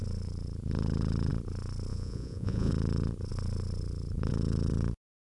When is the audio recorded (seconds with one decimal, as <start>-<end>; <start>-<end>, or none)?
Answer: 0.0-1.9; 2.7-5.2